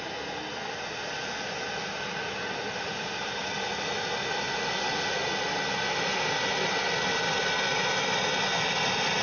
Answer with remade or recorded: recorded